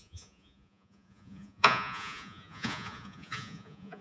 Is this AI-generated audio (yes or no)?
yes